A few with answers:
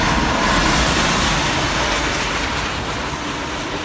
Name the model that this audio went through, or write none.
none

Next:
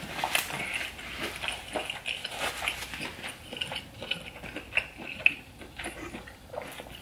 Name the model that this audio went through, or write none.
none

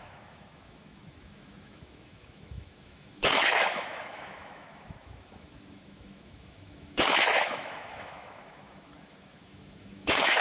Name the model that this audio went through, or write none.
autoencoder, DAC-VAE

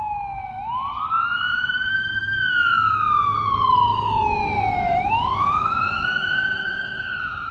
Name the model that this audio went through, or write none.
autoencoder, DAC-VAE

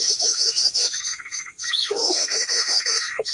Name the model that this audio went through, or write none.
autoencoder, DAC-VAE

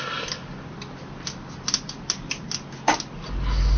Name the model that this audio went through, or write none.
none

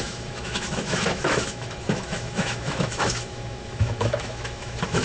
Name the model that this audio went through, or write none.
autoencoder, DAC-VAE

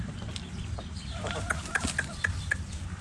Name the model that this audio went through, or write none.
none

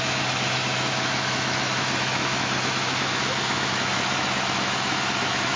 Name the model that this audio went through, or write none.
autoencoder, DAC-VAE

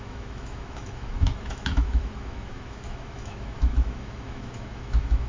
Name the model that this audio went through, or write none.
autoencoder, DAC-VAE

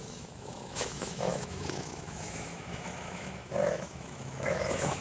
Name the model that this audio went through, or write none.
autoencoder, DAC-VAE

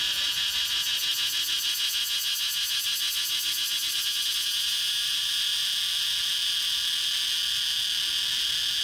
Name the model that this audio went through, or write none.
none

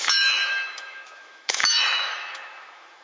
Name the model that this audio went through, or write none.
autoencoder, DAC-VAE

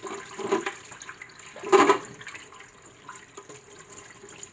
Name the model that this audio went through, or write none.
none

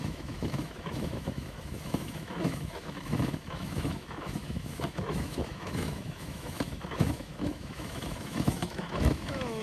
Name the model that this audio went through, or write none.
autoencoder, DAC-VAE